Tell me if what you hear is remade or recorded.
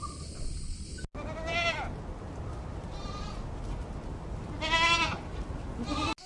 recorded